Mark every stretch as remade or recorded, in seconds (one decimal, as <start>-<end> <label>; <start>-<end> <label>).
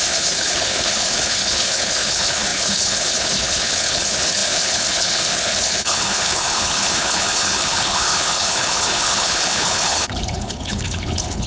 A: 0.0-11.5 remade